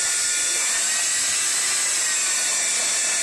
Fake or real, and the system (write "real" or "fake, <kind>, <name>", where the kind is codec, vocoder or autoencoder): real